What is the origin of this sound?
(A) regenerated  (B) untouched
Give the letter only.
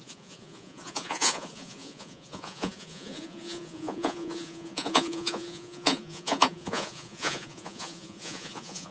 A